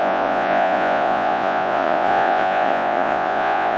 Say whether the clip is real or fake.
fake